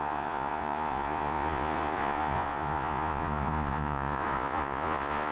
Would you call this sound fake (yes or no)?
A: yes